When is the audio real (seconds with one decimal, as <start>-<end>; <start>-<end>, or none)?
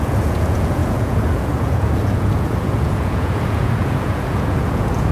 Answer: none